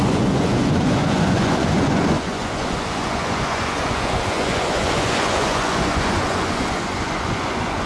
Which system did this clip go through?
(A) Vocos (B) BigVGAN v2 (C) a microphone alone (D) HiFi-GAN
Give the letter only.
A